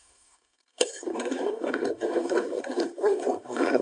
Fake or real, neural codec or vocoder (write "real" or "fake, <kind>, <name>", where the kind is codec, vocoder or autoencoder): fake, codec, SNAC